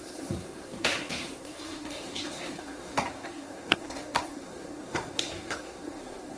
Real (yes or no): no